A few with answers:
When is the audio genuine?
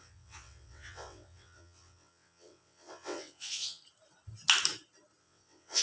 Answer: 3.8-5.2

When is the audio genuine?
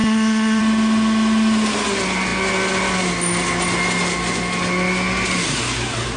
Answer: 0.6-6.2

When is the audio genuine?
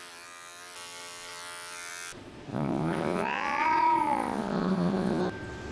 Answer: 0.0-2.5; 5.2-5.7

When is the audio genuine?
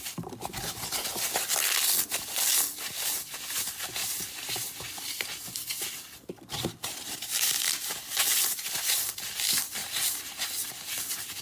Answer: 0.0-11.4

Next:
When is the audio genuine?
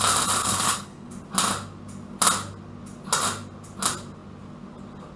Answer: 0.0-0.4; 1.1-5.2